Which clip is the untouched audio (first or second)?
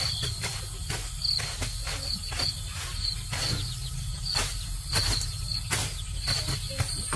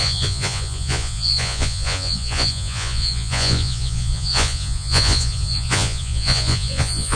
first